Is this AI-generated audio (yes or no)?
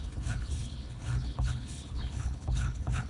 yes